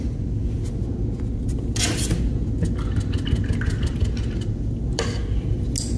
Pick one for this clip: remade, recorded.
recorded